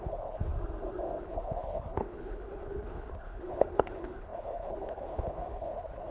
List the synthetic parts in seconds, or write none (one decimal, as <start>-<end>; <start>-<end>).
0.0-0.5; 1.2-6.1